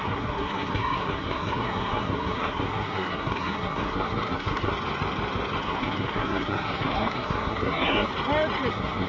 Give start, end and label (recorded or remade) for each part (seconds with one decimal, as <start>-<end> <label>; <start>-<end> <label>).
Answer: 0.0-4.7 remade; 4.7-5.6 recorded; 5.6-8.1 remade; 8.1-8.7 recorded; 8.7-9.1 remade